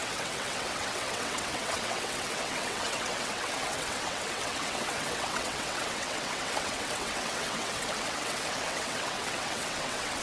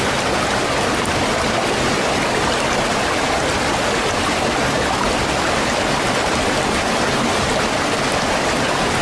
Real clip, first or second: second